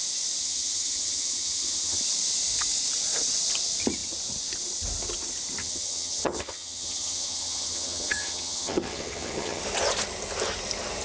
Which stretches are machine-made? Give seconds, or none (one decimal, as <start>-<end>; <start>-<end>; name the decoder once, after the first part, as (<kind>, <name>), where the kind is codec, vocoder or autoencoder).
0.4-2.0 (vocoder, HiFi-GAN); 5.6-9.6

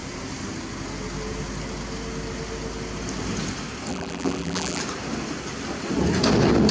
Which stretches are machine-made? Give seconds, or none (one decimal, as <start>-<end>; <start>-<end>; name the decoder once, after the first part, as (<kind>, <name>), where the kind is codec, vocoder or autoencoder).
3.9-4.8 (vocoder, BigVGAN v2)

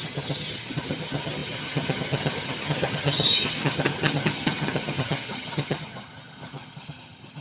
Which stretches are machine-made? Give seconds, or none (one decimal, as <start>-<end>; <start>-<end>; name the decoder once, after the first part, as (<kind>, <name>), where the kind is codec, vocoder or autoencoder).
0.0-7.4 (vocoder, HiFi-GAN)

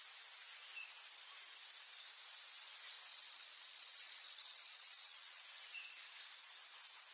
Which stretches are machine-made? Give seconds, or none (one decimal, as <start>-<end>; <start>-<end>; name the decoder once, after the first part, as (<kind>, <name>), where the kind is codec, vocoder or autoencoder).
3.1-5.4 (vocoder, Vocos)

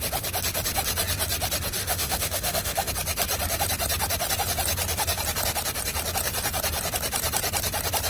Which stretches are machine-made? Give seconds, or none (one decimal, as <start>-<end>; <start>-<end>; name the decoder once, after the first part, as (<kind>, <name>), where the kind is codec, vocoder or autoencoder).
1.8-2.9 (autoencoder, DAC-VAE)

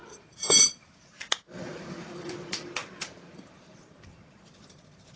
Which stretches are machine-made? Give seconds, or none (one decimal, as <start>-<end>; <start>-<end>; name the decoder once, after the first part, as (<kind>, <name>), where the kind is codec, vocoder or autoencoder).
0.0-5.2 (vocoder, BigVGAN v2)